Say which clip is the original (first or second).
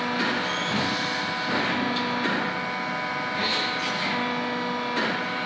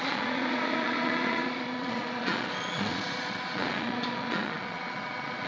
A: first